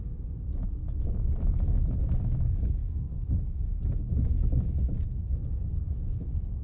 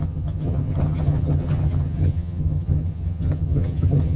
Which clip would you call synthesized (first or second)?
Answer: second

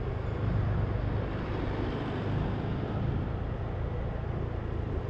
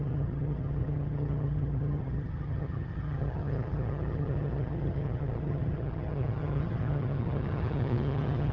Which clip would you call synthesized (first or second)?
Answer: second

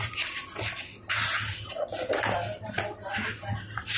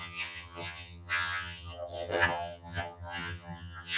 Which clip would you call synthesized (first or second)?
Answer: second